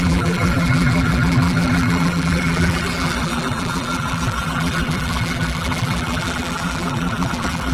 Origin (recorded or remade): remade